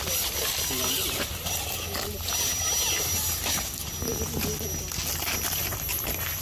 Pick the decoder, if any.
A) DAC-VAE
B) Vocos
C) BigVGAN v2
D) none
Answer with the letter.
D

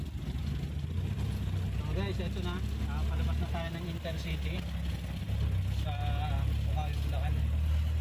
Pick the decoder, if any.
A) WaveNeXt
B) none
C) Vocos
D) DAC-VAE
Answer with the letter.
B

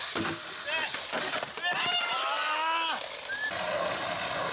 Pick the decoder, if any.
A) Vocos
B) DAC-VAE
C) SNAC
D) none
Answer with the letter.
D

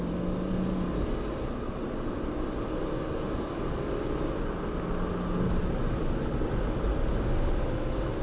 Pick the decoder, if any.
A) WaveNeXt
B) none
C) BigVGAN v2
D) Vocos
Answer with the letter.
B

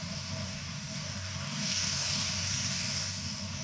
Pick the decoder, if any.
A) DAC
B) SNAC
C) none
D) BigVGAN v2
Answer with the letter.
A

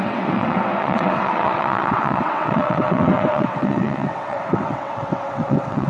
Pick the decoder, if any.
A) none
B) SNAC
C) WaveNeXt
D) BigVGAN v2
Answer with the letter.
C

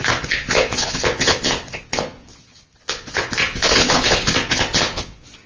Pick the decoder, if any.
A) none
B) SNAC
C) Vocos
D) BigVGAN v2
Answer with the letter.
C